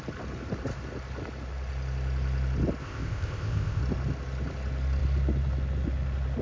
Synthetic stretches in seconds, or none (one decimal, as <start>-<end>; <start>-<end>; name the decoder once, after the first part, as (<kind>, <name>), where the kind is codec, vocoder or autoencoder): 2.8-3.8 (codec, ZipCodec)